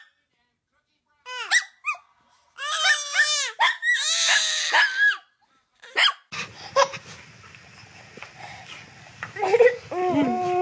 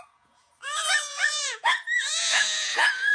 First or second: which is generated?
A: second